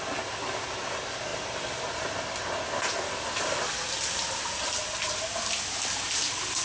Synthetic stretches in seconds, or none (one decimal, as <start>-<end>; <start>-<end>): none